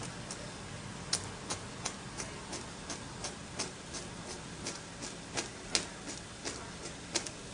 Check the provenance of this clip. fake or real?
real